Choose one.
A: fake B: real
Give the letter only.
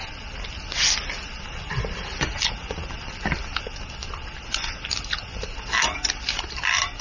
B